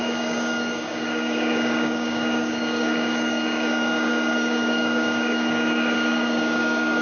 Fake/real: fake